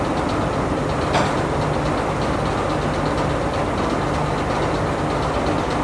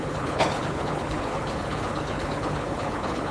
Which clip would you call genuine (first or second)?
first